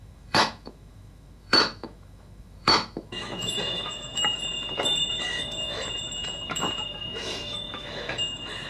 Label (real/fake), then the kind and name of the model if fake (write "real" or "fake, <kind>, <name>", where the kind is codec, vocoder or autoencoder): fake, autoencoder, DAC-VAE